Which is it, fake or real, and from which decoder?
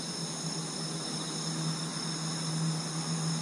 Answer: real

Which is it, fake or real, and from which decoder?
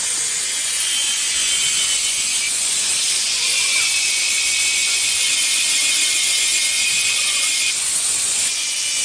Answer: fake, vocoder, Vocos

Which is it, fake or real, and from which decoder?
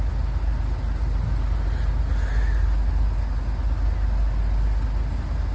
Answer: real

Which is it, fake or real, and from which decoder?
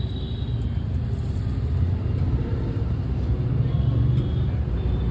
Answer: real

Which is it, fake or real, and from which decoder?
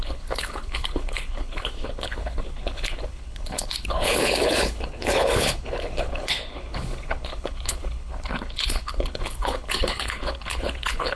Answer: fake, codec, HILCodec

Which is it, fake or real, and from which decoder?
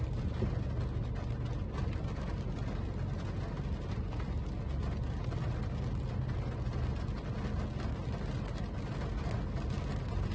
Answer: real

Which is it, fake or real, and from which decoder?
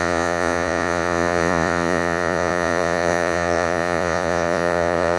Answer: fake, vocoder, Vocos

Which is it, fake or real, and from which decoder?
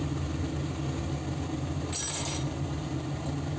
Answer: real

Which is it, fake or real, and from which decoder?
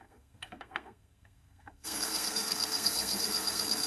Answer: fake, codec, SNAC